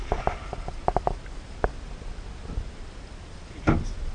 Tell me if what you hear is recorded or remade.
recorded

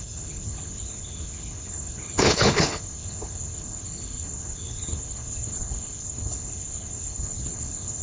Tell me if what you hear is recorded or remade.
remade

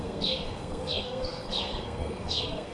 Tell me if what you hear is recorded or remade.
remade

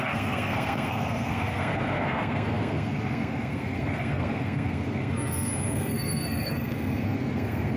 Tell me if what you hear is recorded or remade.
remade